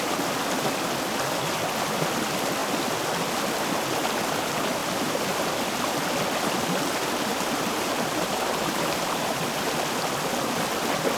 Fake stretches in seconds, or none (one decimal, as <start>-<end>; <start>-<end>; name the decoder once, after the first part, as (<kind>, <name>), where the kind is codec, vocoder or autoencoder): 4.8-5.5 (vocoder, BigVGAN v2); 7.3-9.4